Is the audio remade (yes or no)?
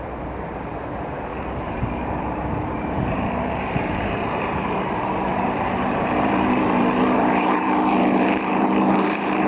yes